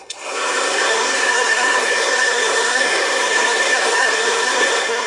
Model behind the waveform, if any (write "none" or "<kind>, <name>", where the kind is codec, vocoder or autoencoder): codec, SNAC